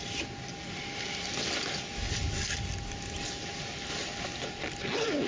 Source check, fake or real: real